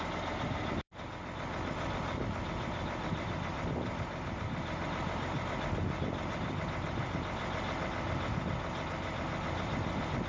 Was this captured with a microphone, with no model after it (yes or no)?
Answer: yes